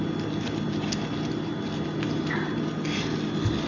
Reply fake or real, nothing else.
real